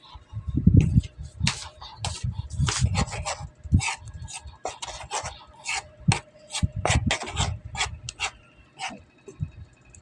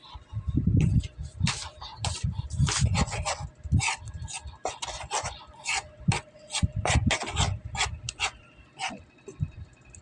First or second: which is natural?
first